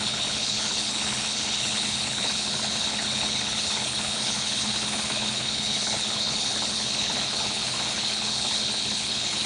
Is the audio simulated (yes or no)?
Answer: yes